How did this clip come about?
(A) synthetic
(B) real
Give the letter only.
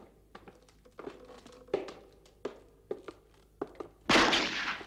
B